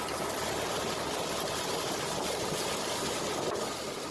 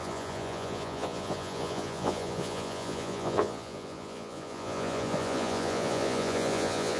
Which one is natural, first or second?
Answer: first